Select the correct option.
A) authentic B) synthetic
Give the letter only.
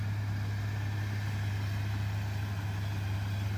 A